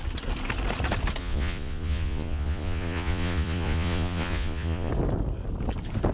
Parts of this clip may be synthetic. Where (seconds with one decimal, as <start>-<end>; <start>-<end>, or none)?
1.2-4.9